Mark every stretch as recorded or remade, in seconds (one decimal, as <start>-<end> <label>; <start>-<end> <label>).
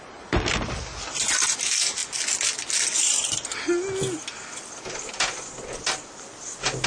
0.0-6.9 recorded